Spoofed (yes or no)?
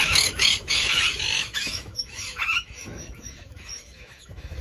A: yes